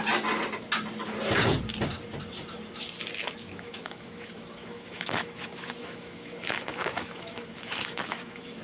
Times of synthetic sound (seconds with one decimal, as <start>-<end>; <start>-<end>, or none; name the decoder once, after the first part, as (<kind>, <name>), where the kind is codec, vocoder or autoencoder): 3.2-8.6 (autoencoder, DAC-VAE)